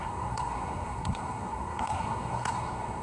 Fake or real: fake